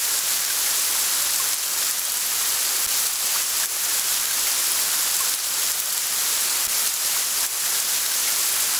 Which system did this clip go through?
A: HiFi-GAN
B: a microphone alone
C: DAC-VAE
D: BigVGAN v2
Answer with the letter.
D